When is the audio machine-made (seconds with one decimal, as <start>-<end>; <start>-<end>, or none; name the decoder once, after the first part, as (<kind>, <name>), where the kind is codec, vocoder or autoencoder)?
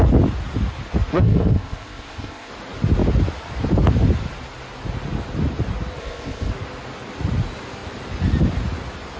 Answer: 1.1-2.5 (codec, ZipCodec); 6.0-6.5